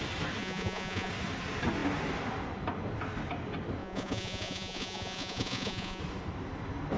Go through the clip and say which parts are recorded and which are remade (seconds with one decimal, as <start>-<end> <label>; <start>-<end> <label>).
0.0-0.4 recorded; 0.4-1.1 remade; 1.1-3.8 recorded; 3.8-6.0 remade; 6.0-7.0 recorded